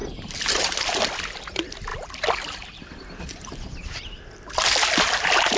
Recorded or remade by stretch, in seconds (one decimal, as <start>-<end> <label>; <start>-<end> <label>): 0.0-0.6 recorded; 0.6-5.6 remade